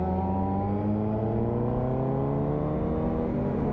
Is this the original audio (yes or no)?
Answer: yes